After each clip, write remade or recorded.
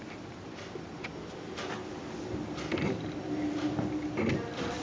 recorded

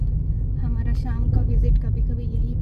recorded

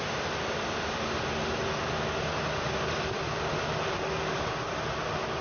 recorded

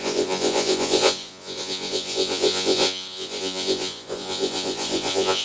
remade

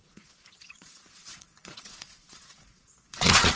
remade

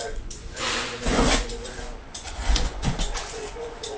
remade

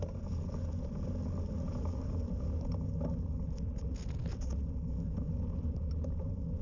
recorded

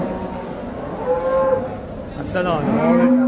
recorded